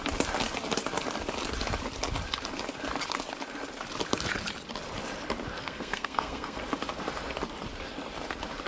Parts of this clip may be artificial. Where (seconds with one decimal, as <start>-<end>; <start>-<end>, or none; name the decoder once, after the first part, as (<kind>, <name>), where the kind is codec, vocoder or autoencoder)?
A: 5.6-6.6 (codec, SNAC)